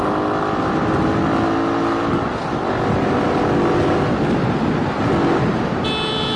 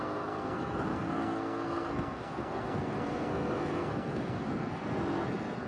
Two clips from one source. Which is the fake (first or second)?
second